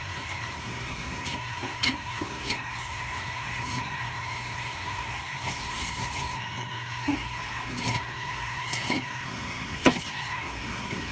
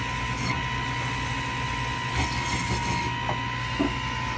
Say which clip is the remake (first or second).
first